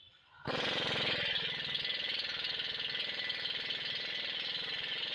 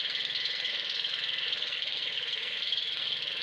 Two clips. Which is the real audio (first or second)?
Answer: first